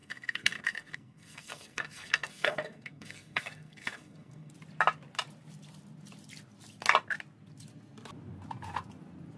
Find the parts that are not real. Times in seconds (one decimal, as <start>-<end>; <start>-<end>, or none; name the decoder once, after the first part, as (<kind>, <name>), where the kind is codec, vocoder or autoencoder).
0.0-4.5 (codec, SNAC)